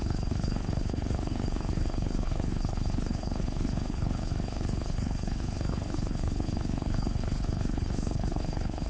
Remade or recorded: remade